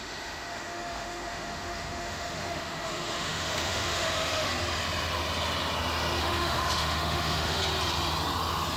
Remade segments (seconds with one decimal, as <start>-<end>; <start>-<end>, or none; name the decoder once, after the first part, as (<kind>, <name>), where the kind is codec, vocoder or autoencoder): 0.0-4.5 (autoencoder, DAC-VAE); 6.2-7.6